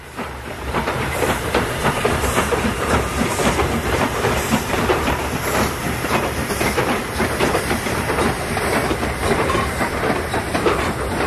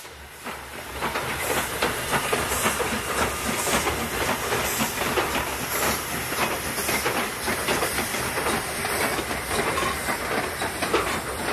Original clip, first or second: second